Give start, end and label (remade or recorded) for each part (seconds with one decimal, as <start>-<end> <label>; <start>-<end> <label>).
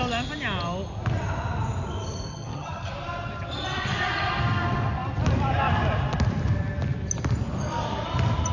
0.0-2.3 recorded; 2.3-2.9 remade; 2.9-8.5 recorded